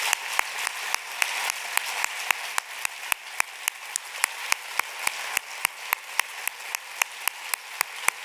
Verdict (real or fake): real